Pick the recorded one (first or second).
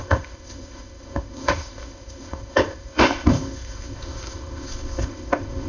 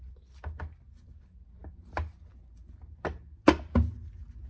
second